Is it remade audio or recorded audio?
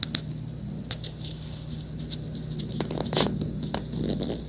recorded